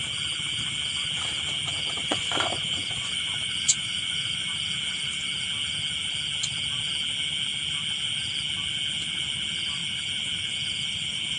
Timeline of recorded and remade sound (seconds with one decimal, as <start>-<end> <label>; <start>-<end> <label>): 0.0-2.1 recorded; 2.1-4.5 remade; 4.5-11.4 recorded

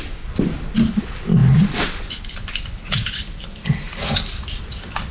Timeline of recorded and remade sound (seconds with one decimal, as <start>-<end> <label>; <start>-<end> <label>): 0.0-5.1 recorded